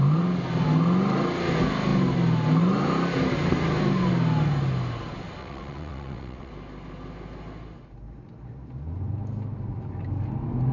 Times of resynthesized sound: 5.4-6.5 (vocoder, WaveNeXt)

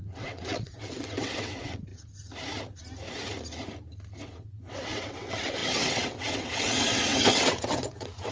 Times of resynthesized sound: 0.0-1.9 (vocoder, WaveNeXt); 4.2-8.3